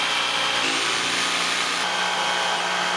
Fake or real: real